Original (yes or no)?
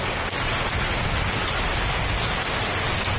yes